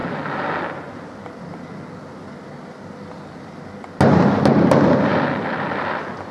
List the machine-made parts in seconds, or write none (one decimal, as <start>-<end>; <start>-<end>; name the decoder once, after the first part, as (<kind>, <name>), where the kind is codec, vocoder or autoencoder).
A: none

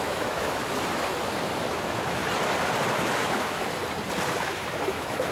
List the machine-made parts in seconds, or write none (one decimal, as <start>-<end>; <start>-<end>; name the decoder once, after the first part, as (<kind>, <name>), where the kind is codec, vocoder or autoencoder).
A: 0.0-0.6 (autoencoder, DAC-VAE); 1.7-2.2; 2.9-3.8; 4.4-5.3

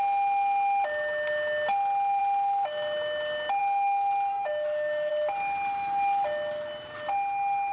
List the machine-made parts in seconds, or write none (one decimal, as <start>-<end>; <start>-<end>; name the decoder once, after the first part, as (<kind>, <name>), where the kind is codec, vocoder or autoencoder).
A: 4.3-5.1 (autoencoder, DAC-VAE)

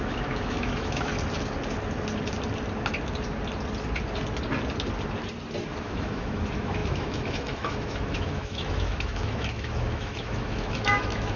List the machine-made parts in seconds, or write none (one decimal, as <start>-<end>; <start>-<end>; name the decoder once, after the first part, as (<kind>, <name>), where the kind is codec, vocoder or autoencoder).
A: 0.0-1.1 (autoencoder, DAC-VAE); 5.8-11.4